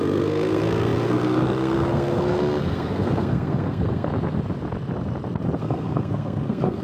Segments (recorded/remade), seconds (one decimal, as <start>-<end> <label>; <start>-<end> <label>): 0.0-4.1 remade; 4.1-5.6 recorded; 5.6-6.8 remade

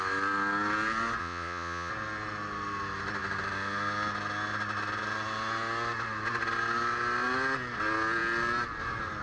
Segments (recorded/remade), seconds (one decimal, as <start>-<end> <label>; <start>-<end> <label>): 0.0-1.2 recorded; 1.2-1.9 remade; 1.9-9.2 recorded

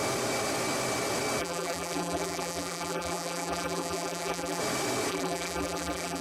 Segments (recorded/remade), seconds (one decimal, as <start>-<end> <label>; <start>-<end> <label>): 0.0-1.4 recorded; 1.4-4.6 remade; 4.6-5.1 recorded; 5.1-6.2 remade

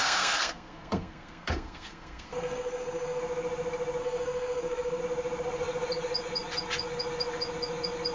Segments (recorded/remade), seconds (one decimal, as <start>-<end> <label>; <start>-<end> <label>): 0.0-3.2 remade; 3.2-4.0 recorded; 4.0-5.0 remade; 5.0-8.1 recorded

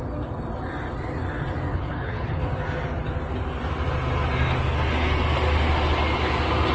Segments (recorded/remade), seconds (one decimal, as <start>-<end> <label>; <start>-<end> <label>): 0.0-1.7 recorded; 1.7-2.4 remade; 2.4-6.7 recorded

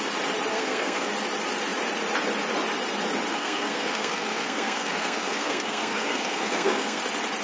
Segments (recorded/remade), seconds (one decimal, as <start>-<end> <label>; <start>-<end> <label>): 0.0-0.5 recorded; 0.5-1.1 remade; 1.1-3.3 recorded; 3.3-7.0 remade; 7.0-7.4 recorded

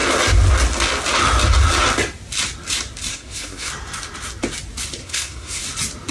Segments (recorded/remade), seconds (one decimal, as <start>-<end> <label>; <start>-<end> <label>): 0.0-3.1 recorded; 3.1-3.7 remade; 3.7-5.0 recorded; 5.0-5.6 remade; 5.6-6.1 recorded

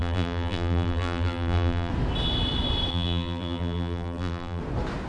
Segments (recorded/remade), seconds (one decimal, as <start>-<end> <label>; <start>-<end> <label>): 0.0-1.9 remade; 1.9-2.9 recorded; 2.9-4.6 remade; 4.6-5.1 recorded